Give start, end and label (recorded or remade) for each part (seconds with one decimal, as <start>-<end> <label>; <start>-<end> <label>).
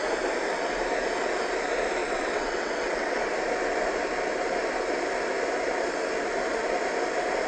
0.0-2.0 recorded; 2.0-3.2 remade; 3.2-7.5 recorded